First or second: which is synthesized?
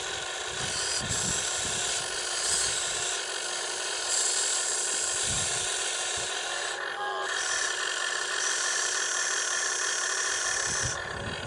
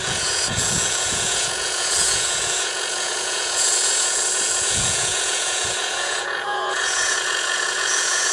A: second